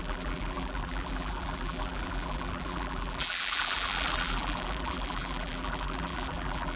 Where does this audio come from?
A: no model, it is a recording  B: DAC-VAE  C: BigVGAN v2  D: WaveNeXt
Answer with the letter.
C